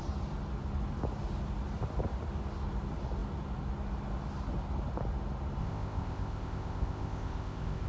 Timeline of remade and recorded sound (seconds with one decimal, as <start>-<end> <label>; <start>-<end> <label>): 0.0-5.6 recorded; 5.6-7.9 remade